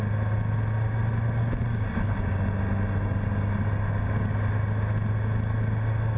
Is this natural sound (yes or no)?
yes